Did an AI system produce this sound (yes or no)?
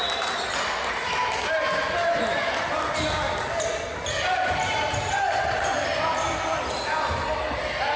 no